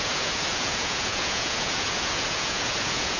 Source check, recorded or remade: remade